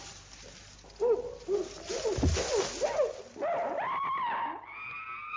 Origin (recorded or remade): recorded